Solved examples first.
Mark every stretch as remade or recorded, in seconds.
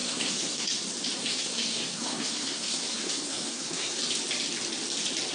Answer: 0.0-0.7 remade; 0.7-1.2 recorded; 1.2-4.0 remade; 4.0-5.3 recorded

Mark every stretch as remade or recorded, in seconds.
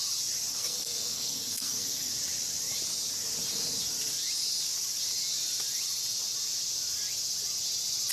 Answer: 0.0-0.5 recorded; 0.5-2.1 remade; 2.1-8.1 recorded